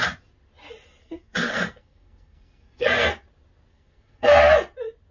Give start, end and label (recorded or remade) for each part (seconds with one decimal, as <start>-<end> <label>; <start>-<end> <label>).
0.0-1.0 recorded; 1.0-3.1 remade; 3.1-3.7 recorded; 3.7-4.4 remade; 4.4-5.1 recorded